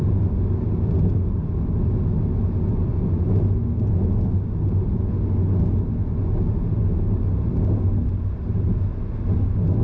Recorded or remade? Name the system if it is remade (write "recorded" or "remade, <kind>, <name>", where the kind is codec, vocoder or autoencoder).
recorded